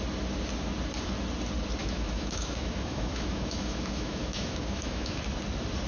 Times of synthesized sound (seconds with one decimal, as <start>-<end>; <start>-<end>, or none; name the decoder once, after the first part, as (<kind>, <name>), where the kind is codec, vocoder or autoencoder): 1.8-5.2 (autoencoder, DAC-VAE)